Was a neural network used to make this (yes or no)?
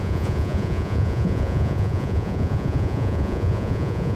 yes